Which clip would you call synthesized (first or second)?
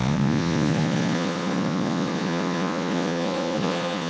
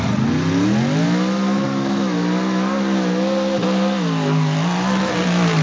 first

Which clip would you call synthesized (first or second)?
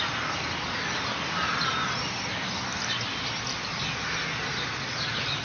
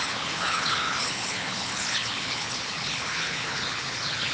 second